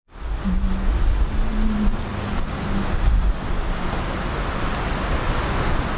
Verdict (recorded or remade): recorded